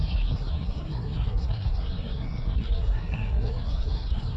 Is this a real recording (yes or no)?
no